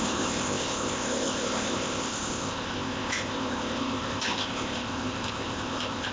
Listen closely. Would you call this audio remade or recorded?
remade